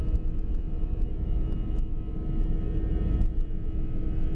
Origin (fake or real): real